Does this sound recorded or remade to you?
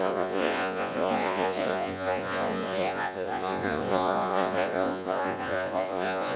remade